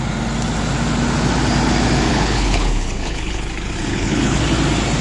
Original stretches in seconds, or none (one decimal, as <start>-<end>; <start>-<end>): 0.0-2.1; 3.5-3.9; 4.4-5.0